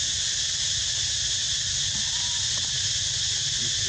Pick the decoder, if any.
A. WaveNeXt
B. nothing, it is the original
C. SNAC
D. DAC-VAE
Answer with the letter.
B